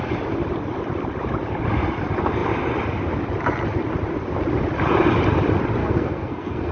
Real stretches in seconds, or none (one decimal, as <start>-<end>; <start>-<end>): 0.0-5.8